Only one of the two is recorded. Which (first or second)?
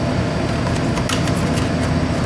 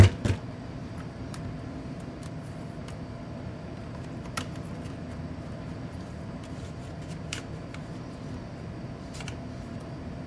first